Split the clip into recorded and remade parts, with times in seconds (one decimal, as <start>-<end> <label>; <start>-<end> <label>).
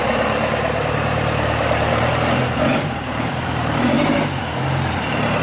0.0-5.4 remade